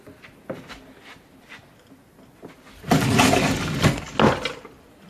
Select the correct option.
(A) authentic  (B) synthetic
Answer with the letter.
A